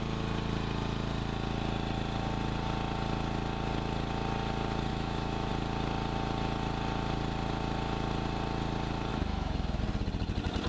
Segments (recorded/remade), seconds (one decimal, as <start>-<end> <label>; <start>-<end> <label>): 0.0-4.9 recorded; 4.9-5.5 remade; 5.5-9.1 recorded; 9.1-9.8 remade; 9.8-10.7 recorded